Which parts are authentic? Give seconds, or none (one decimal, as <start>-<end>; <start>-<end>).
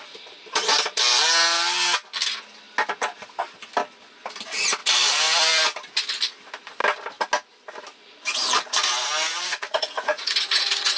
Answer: 0.0-9.4